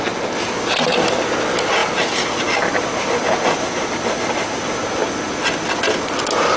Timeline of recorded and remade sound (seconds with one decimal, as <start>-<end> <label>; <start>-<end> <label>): 0.0-6.6 recorded

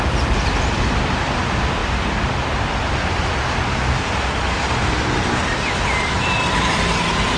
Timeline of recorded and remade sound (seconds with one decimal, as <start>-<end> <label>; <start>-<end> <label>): 0.0-1.4 remade; 1.4-1.8 recorded; 1.8-2.5 remade; 2.5-3.0 recorded; 3.0-7.4 remade

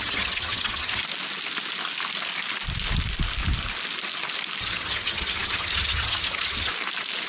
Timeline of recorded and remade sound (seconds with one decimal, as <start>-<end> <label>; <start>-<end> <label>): 0.0-1.0 remade; 1.0-4.6 recorded; 4.6-6.7 remade; 6.7-7.3 recorded